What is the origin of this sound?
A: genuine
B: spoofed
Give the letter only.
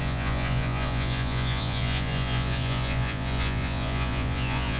B